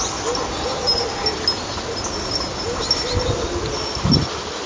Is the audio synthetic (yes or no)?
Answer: no